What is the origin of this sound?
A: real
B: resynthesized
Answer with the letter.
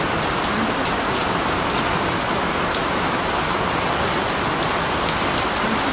A